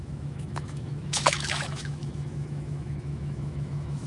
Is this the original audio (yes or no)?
no